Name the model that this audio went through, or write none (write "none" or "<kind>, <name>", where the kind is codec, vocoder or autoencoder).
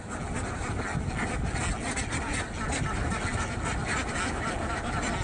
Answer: none